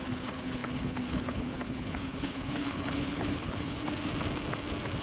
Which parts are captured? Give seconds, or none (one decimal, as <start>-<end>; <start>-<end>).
3.8-5.0